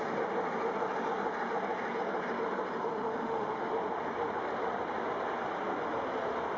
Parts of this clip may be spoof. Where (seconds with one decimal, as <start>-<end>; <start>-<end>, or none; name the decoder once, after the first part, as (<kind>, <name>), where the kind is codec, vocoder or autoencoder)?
2.9-3.7 (autoencoder, DAC-VAE)